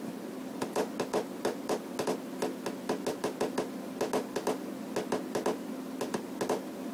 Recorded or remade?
recorded